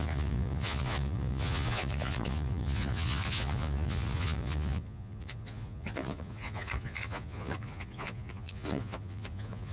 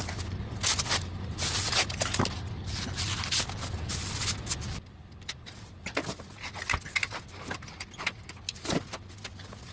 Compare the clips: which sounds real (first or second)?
second